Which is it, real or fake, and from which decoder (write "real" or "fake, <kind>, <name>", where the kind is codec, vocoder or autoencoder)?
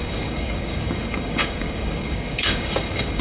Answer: fake, codec, DAC